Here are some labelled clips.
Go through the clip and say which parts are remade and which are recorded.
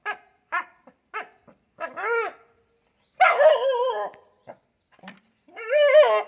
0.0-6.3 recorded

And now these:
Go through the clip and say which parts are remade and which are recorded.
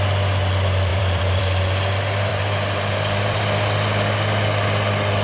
0.0-0.9 recorded; 0.9-1.4 remade; 1.4-2.3 recorded; 2.3-3.4 remade; 3.4-5.2 recorded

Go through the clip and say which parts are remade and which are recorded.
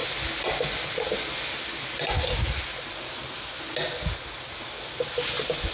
0.0-5.7 recorded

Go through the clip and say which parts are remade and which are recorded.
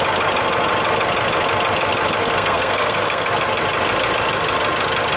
0.0-2.2 recorded; 2.2-3.3 remade; 3.3-5.2 recorded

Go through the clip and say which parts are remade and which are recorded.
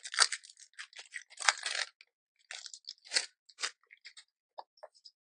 0.0-5.2 recorded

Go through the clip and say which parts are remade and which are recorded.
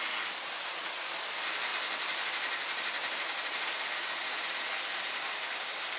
0.0-6.0 recorded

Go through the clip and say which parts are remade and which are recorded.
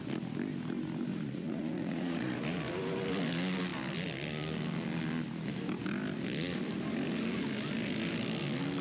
0.0-1.1 recorded; 1.1-2.4 remade; 2.4-8.8 recorded